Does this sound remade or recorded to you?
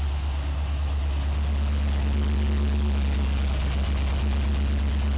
recorded